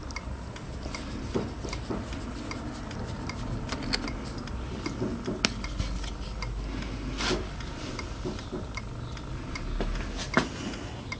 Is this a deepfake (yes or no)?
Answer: no